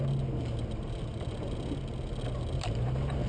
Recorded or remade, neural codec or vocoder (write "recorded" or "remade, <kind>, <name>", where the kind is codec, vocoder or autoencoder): recorded